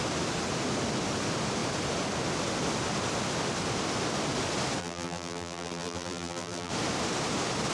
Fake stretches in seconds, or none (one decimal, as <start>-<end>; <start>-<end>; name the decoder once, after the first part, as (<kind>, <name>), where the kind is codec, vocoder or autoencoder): 4.8-6.7 (vocoder, BigVGAN v2)